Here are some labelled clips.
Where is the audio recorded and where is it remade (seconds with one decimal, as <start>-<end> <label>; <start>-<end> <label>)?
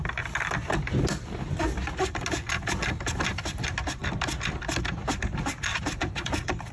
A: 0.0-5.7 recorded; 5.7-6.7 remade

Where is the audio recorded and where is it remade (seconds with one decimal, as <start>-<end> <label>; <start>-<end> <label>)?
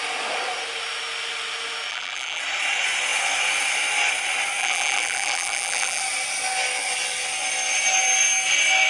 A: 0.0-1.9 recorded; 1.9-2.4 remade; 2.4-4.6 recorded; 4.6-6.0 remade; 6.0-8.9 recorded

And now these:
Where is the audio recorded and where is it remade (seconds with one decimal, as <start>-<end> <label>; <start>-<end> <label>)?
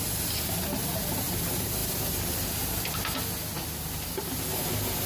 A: 0.0-0.8 recorded; 0.8-1.4 remade; 1.4-5.1 recorded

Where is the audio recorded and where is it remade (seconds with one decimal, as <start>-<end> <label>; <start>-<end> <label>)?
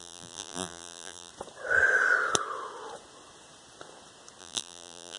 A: 0.0-1.3 remade; 1.3-4.4 recorded; 4.4-5.2 remade